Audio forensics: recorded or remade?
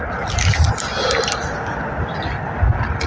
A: recorded